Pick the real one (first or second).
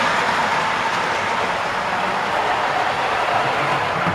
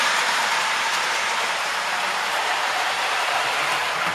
first